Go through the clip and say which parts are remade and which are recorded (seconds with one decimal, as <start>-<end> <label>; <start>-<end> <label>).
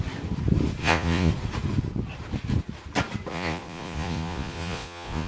0.0-0.8 recorded; 0.8-1.3 remade; 1.3-3.3 recorded; 3.3-5.3 remade